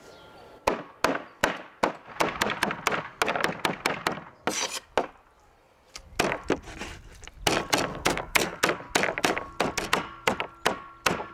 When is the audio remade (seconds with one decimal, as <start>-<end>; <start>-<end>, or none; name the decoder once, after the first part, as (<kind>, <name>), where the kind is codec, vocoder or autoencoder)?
7.9-8.6 (codec, SNAC)